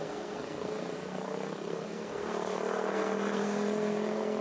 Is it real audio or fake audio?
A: fake